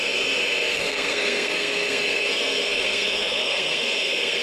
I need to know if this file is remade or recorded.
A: remade